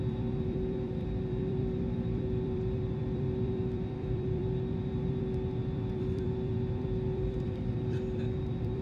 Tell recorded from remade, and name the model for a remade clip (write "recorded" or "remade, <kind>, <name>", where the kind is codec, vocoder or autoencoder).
remade, vocoder, BigVGAN v2